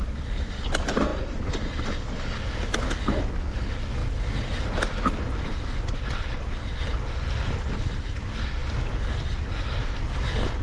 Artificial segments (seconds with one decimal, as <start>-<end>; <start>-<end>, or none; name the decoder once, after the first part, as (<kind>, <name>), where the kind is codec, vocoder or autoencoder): none